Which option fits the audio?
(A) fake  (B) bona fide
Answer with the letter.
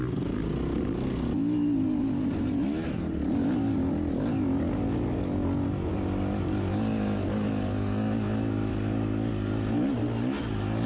B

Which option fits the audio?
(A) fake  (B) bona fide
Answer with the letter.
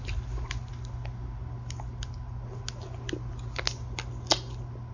B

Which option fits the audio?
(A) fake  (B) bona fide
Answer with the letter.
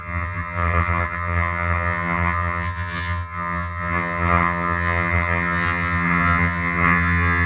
A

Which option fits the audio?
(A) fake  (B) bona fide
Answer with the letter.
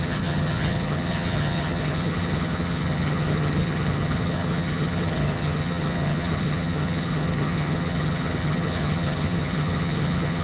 A